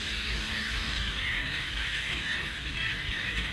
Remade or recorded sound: remade